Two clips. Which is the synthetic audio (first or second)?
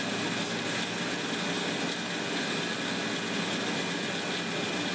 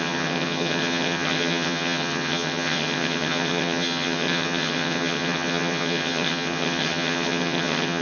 second